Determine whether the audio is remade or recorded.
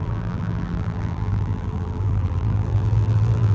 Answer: remade